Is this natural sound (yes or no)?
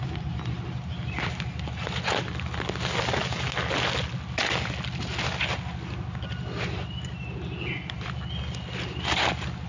yes